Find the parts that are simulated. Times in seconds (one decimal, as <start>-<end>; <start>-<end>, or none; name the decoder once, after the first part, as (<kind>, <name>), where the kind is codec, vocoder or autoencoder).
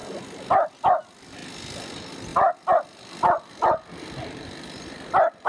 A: none